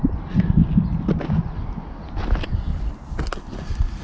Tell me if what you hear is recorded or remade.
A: recorded